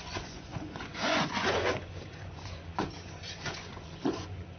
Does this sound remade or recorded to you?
remade